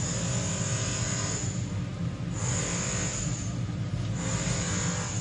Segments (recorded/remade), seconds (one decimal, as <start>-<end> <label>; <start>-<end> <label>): 0.0-5.2 recorded